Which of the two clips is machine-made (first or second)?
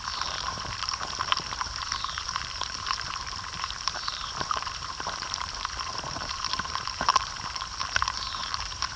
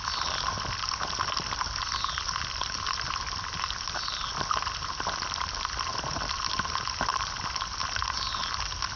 first